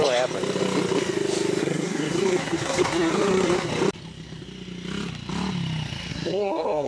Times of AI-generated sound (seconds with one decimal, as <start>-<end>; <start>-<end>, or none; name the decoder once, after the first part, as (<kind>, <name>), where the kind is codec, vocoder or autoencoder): 1.6-3.7 (codec, SNAC); 6.1-6.9